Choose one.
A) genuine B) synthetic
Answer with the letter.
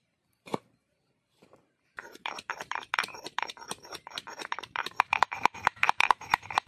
B